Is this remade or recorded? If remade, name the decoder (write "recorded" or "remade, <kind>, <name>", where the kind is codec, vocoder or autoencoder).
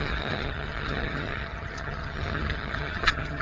remade, vocoder, HiFi-GAN